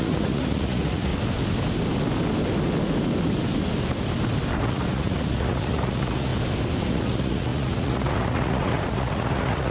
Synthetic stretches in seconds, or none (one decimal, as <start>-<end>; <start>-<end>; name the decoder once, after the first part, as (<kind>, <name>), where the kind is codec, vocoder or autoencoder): 0.0-1.1 (vocoder, Vocos); 4.6-6.3; 6.8-9.7